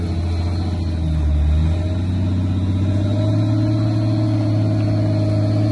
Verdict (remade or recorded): recorded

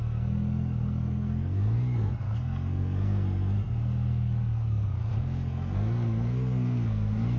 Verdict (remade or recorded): remade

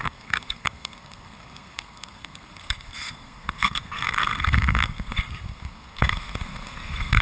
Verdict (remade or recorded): remade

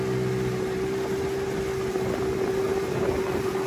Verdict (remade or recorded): recorded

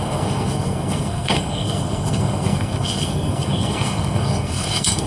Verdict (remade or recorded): remade